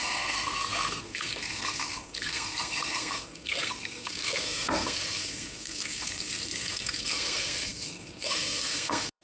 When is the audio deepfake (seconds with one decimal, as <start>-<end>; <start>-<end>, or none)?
0.0-9.2